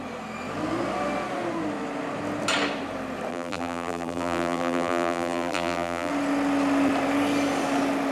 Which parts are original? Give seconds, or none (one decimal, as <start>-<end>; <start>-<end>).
0.0-3.3; 6.1-8.1